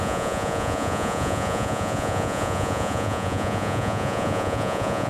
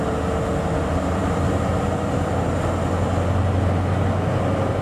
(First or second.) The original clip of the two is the second